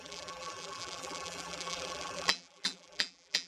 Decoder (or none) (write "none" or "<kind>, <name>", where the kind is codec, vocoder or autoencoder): vocoder, BigVGAN v2